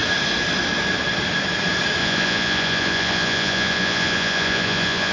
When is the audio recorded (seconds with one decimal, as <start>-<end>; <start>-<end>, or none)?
0.0-2.0